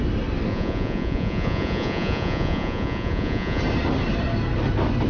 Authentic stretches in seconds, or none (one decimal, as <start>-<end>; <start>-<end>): 0.0-0.5; 3.6-5.1